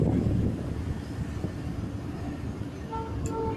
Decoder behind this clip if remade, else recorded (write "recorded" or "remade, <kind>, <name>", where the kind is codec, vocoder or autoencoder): recorded